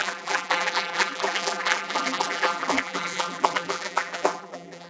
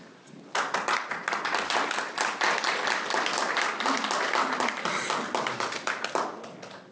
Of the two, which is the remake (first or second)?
first